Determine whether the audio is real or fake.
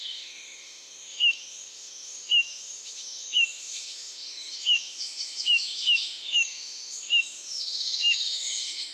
fake